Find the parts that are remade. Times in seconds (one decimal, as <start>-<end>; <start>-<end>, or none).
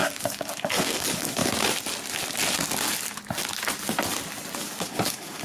0.0-1.4; 4.6-5.4